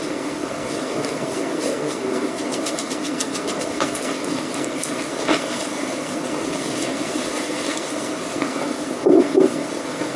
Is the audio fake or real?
fake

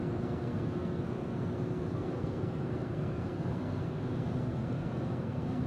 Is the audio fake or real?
fake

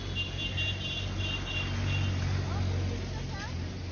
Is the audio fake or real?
real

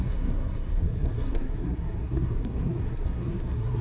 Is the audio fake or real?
fake